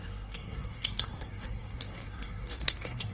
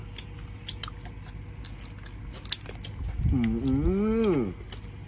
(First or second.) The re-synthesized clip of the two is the first